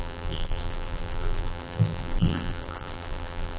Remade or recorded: remade